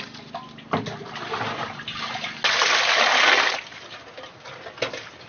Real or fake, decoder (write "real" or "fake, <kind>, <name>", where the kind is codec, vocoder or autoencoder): real